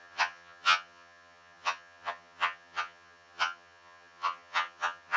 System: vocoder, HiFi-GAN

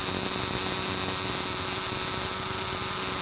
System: none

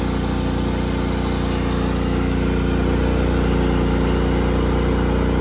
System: none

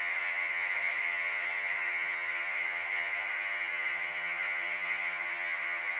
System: vocoder, HiFi-GAN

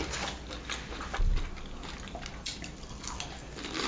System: none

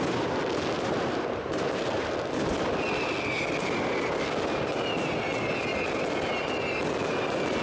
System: none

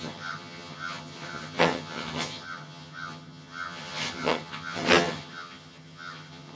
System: vocoder, HiFi-GAN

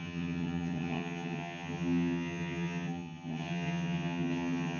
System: vocoder, HiFi-GAN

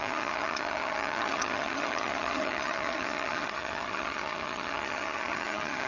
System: vocoder, HiFi-GAN